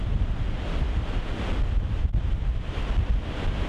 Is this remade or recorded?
recorded